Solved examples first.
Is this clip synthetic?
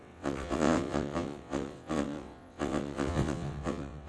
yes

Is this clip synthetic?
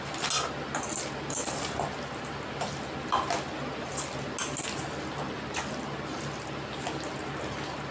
no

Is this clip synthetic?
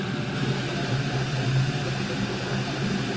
no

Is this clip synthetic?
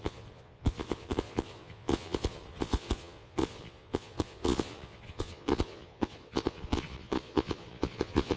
yes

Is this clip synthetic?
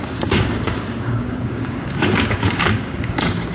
yes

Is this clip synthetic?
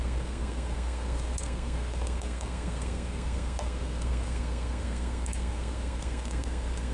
yes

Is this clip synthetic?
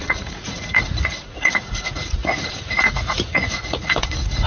yes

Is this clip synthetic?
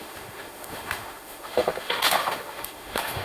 yes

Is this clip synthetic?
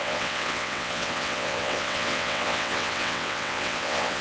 yes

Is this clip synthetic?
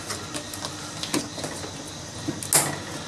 no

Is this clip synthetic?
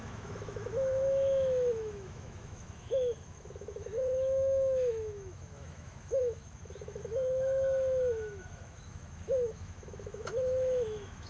yes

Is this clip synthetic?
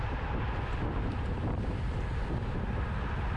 no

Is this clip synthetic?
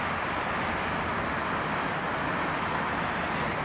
no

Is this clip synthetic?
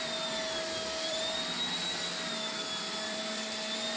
no